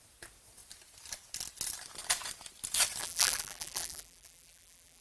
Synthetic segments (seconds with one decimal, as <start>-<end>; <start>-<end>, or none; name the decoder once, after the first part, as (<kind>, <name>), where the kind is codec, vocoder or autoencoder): 3.0-5.0 (vocoder, BigVGAN v2)